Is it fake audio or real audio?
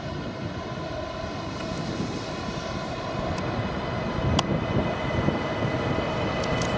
real